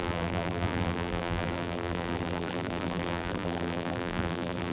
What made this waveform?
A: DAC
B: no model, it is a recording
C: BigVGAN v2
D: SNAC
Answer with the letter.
C